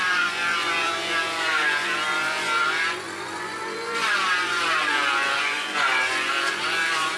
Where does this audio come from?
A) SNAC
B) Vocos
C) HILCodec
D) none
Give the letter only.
B